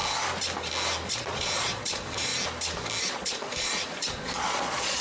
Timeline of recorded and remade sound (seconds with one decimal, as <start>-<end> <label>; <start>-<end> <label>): 0.0-1.1 recorded; 1.1-2.3 remade; 2.3-3.0 recorded; 3.0-5.0 remade